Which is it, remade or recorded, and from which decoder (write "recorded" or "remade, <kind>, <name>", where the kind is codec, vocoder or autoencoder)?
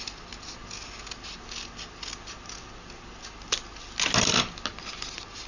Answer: recorded